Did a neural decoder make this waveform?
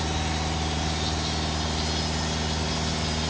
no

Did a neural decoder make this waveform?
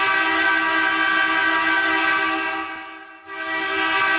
no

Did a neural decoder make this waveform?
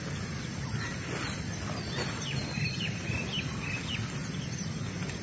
no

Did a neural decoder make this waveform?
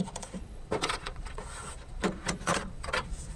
yes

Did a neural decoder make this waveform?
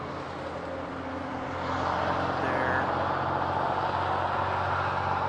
no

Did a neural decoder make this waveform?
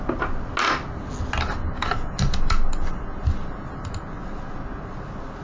no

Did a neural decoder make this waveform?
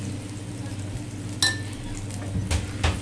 no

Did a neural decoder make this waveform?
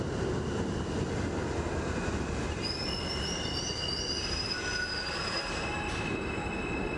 no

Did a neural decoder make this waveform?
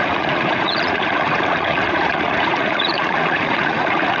yes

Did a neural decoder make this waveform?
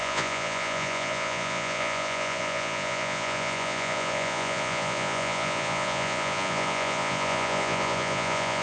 yes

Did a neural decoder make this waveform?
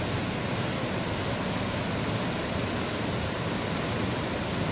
no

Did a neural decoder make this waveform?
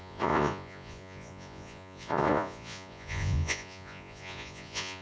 yes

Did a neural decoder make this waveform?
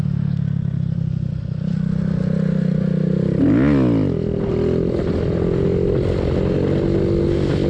no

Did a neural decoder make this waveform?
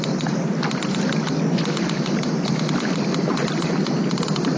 no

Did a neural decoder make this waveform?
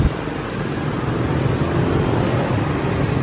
no